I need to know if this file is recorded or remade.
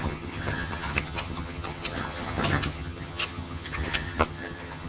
remade